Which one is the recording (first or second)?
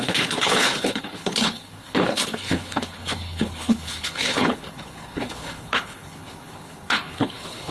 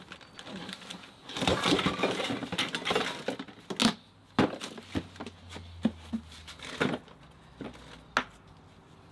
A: second